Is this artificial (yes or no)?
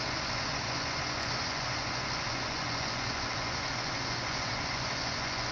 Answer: yes